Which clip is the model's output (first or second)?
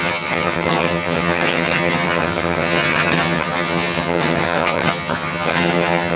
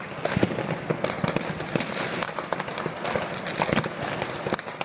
first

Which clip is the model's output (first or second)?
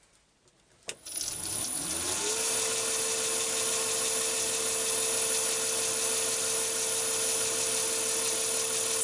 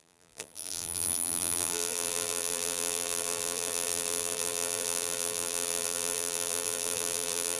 second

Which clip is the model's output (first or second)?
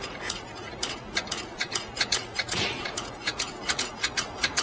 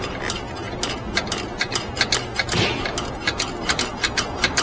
first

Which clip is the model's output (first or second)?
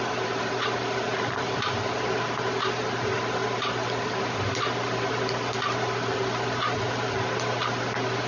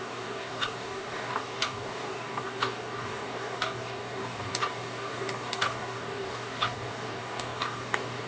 second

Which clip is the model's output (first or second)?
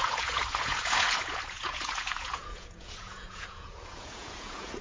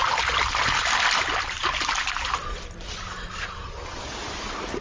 first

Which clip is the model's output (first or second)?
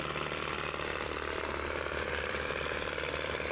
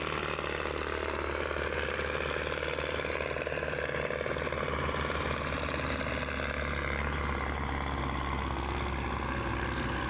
first